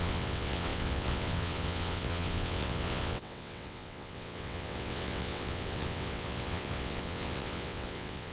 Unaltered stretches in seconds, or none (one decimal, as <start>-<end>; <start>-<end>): none